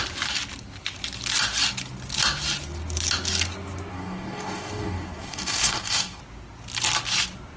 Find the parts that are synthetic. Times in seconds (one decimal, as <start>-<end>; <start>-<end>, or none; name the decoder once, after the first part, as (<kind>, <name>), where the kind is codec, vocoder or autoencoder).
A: 3.9-6.2 (codec, DAC)